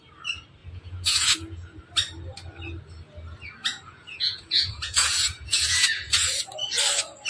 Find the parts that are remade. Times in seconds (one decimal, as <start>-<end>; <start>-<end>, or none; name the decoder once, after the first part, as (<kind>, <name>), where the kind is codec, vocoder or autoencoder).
0.6-1.8 (vocoder, Vocos); 3.6-6.4

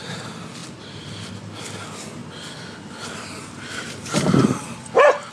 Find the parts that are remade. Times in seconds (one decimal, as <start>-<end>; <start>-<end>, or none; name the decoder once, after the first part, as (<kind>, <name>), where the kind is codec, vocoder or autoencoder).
none

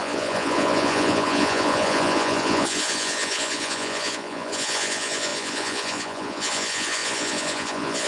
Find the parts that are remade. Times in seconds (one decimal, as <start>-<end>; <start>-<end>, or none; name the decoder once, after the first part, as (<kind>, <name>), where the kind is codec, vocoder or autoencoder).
0.0-8.1 (vocoder, Vocos)

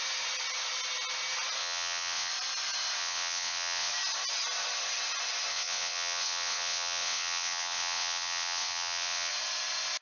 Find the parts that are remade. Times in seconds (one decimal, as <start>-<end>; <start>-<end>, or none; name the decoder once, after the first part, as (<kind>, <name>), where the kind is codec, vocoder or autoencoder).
1.6-2.3 (vocoder, WaveNeXt); 3.0-3.9; 5.5-9.3

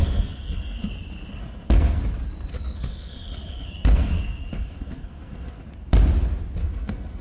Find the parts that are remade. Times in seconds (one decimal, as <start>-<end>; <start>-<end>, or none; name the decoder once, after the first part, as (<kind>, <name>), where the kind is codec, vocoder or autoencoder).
0.0-0.9 (codec, SNAC); 1.3-2.0; 2.5-5.6; 6.6-7.2

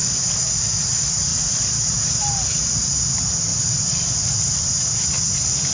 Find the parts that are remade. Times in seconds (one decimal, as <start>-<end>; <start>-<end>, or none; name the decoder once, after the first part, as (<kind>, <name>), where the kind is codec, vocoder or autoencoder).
0.0-0.5 (vocoder, BigVGAN v2); 1.3-2.6; 3.5-4.1